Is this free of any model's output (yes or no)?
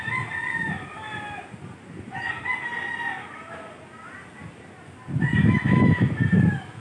yes